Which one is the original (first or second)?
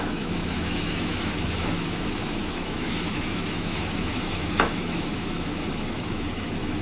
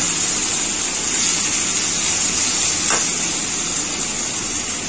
second